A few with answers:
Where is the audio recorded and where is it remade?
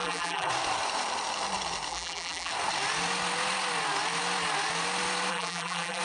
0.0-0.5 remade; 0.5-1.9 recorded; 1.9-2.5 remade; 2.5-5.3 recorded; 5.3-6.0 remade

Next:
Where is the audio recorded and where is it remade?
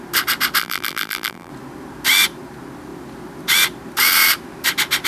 0.0-0.6 recorded; 0.6-1.5 remade; 1.5-5.1 recorded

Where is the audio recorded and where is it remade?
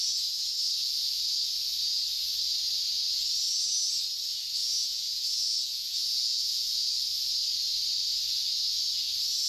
0.0-4.6 recorded; 4.6-6.9 remade; 6.9-9.5 recorded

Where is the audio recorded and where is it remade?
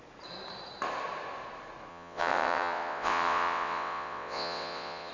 0.0-1.9 recorded; 1.9-5.1 remade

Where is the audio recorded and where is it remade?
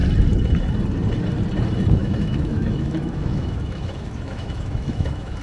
0.0-2.0 recorded; 2.0-5.4 remade